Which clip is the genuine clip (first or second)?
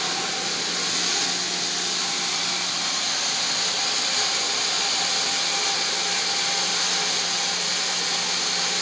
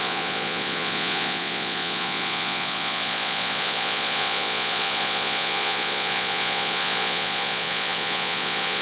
first